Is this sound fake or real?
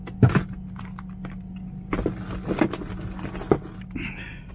real